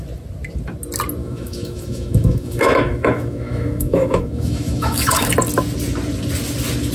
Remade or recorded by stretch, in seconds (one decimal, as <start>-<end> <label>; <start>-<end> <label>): 0.0-1.2 recorded; 1.2-5.3 remade; 5.3-6.9 recorded